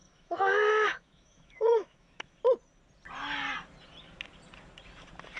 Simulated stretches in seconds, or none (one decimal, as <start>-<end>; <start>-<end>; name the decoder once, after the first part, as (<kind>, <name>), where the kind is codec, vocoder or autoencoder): 0.0-2.4 (autoencoder, DAC-VAE)

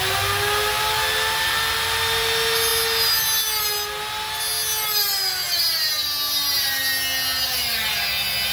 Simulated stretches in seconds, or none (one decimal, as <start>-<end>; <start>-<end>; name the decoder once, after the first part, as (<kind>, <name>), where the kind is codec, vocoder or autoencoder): none

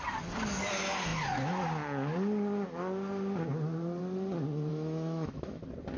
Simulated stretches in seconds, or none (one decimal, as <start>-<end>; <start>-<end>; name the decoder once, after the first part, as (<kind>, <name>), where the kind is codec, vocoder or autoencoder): 4.7-5.6 (autoencoder, DAC-VAE)

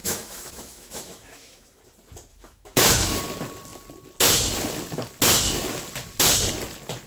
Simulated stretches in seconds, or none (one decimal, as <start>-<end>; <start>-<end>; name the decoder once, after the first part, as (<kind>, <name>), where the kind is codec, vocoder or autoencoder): 0.0-1.8 (autoencoder, DAC-VAE); 2.3-3.2

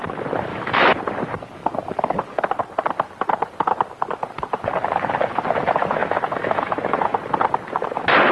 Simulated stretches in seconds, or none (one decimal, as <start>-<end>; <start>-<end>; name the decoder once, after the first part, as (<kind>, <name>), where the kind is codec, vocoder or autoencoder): 0.5-1.0 (autoencoder, DAC-VAE); 6.0-7.2